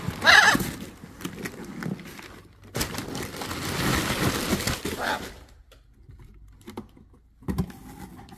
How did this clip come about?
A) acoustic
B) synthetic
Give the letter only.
A